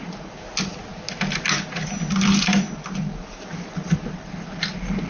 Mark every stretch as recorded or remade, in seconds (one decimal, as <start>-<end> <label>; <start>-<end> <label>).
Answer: 0.0-5.1 recorded